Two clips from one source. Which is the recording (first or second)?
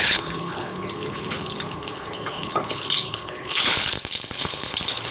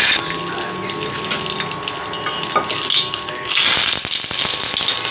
second